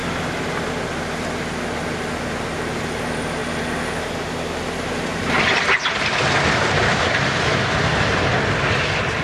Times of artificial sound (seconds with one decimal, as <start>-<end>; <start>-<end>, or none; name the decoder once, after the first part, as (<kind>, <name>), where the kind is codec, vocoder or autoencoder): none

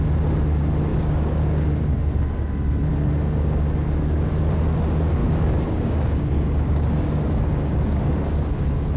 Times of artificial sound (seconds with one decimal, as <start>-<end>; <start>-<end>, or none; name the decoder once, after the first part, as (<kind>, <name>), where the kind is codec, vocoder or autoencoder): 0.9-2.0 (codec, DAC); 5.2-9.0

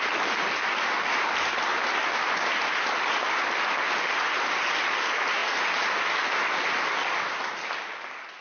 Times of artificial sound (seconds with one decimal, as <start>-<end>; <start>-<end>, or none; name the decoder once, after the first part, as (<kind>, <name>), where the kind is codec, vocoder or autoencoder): none

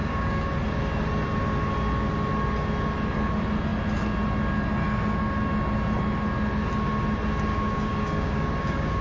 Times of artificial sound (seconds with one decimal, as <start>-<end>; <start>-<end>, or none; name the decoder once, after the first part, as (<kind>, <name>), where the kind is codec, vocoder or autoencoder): 0.0-0.5 (codec, DAC); 7.5-9.0